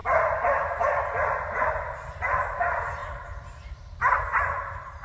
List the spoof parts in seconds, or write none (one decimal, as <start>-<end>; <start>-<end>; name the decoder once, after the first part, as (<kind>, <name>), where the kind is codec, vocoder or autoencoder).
0.0-1.6 (vocoder, BigVGAN v2); 3.0-4.2